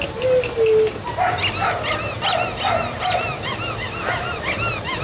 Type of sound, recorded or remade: recorded